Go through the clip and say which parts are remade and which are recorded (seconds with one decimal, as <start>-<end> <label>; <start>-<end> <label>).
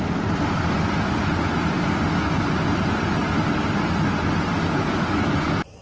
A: 0.0-5.8 recorded